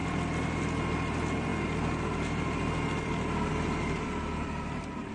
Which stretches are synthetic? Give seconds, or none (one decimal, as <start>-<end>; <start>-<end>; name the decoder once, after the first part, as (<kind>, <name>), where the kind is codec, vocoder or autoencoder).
none